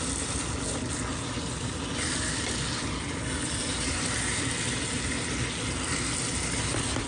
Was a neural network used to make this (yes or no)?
no